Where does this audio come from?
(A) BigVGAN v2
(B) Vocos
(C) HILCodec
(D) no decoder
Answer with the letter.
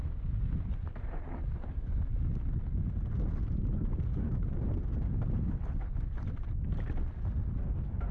D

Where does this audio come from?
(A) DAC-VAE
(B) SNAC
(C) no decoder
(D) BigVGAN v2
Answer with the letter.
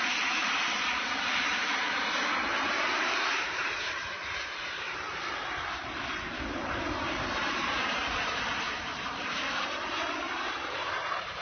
D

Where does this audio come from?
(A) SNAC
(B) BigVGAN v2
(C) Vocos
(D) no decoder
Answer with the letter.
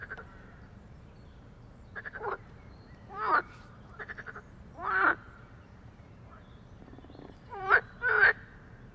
B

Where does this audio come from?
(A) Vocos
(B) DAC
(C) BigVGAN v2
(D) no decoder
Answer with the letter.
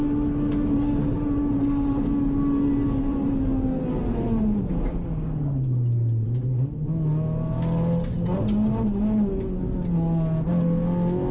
D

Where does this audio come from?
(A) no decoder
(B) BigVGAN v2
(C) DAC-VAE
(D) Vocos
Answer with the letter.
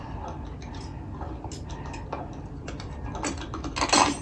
A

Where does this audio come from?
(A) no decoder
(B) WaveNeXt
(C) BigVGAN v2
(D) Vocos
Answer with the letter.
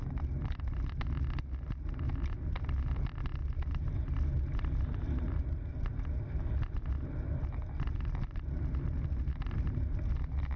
A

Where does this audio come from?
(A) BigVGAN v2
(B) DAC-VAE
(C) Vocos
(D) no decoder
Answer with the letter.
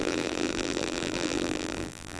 A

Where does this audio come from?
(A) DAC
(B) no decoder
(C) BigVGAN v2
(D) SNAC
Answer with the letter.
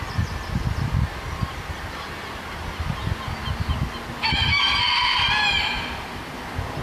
B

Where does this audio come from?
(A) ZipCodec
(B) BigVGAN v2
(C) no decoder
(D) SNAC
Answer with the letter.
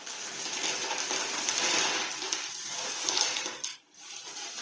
B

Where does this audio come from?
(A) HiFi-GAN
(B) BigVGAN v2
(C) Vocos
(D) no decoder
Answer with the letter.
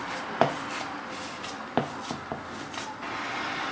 D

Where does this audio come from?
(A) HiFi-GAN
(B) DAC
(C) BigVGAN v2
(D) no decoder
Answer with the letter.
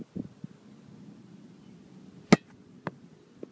D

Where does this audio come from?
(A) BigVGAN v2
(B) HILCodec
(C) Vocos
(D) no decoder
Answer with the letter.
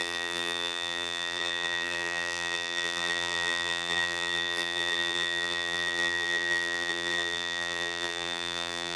A